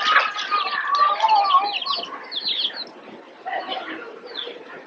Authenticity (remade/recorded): recorded